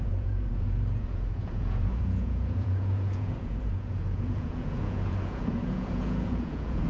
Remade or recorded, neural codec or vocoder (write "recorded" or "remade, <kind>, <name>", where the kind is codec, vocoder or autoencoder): remade, vocoder, Vocos